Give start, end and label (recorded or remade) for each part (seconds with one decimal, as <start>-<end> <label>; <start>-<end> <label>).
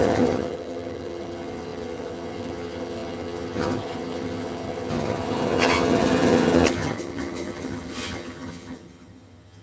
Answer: 0.0-9.6 remade